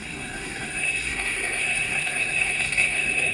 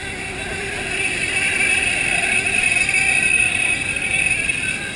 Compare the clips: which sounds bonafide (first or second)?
second